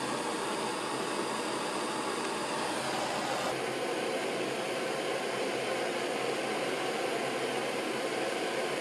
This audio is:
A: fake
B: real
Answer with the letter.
B